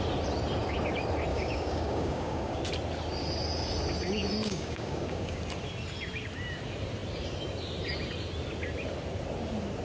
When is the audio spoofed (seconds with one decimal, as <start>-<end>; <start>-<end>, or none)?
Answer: 1.3-2.6; 4.4-5.4